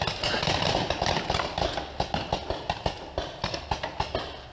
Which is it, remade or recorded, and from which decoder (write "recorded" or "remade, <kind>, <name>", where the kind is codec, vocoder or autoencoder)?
recorded